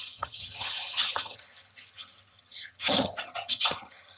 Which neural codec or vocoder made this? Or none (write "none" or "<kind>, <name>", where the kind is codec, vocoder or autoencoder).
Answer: vocoder, HiFi-GAN